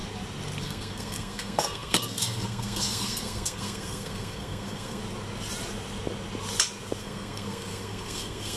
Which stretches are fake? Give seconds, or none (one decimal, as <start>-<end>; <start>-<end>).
0.6-5.0; 7.0-8.6